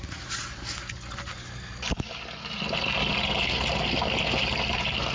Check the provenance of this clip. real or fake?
real